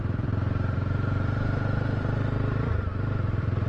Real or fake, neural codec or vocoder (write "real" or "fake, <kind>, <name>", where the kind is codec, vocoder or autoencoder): fake, vocoder, BigVGAN v2